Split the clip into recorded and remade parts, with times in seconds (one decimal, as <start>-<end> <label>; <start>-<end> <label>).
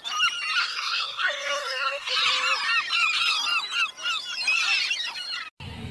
0.0-0.6 recorded; 0.6-2.1 remade; 2.1-5.9 recorded